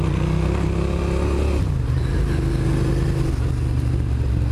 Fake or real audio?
real